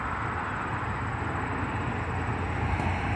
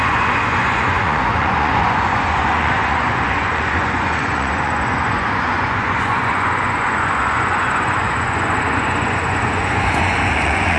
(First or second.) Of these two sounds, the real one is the first